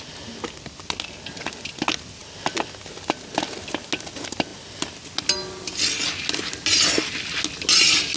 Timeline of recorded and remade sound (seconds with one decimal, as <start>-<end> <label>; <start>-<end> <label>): 0.0-8.2 recorded